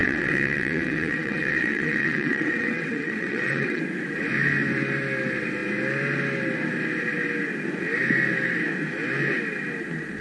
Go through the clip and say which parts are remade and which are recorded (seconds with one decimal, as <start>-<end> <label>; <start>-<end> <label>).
0.0-3.8 remade; 3.8-10.2 recorded